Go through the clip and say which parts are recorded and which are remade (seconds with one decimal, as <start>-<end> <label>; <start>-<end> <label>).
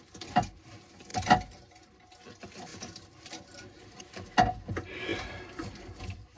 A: 0.0-1.1 recorded; 1.1-1.8 remade; 1.8-2.7 recorded; 2.7-4.0 remade; 4.0-5.1 recorded; 5.1-6.4 remade